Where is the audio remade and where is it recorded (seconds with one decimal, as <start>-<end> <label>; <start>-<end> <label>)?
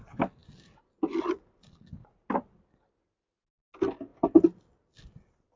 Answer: 0.0-5.6 recorded